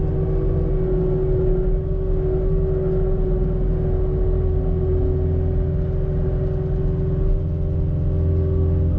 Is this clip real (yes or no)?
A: yes